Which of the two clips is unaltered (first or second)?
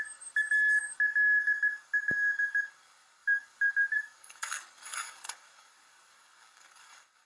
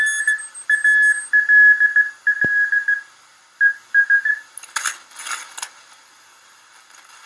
second